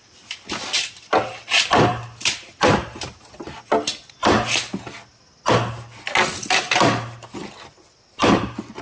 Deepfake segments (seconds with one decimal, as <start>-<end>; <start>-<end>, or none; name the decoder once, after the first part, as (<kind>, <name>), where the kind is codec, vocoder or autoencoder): none